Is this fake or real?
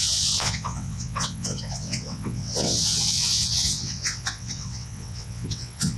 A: fake